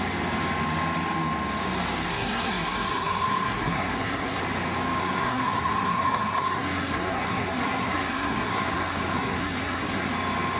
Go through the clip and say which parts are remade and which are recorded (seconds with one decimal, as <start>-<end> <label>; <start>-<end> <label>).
0.0-2.1 recorded; 2.1-4.4 remade; 4.4-5.0 recorded; 5.0-10.1 remade; 10.1-10.6 recorded